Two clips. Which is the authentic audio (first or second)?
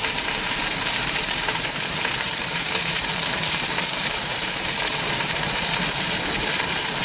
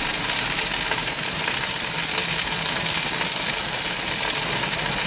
second